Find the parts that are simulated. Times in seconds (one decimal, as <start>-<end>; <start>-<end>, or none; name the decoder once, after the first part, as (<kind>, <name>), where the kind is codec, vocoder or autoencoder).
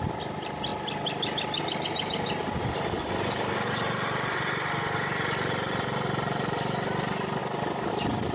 none